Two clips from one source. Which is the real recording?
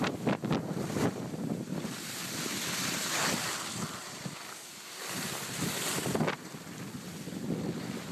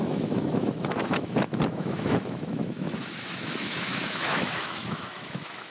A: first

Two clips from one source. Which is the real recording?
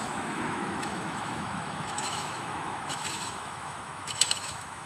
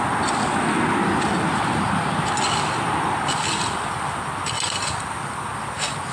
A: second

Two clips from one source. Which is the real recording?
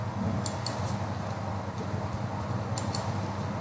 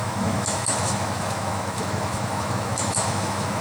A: first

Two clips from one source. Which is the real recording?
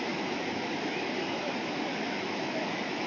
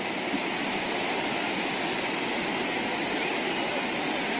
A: second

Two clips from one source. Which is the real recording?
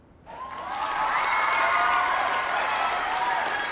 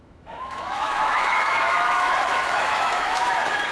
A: first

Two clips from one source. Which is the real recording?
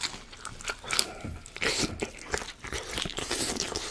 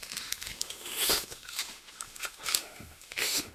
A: first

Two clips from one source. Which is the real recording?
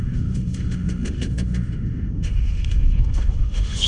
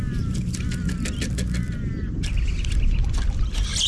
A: second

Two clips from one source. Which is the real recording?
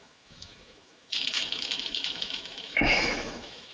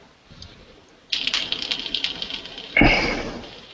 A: second